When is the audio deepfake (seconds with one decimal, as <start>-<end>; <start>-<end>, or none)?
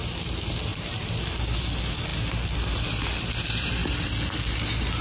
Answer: none